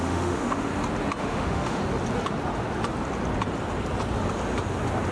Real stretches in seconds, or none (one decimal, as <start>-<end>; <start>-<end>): 0.7-1.2; 1.8-5.1